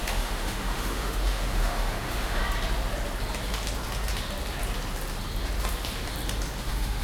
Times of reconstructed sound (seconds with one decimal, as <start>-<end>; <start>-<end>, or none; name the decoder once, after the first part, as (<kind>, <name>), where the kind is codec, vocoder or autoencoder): 0.0-2.4 (autoencoder, DAC-VAE); 6.6-7.0